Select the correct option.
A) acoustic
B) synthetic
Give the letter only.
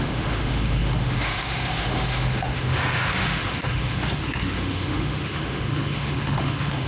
B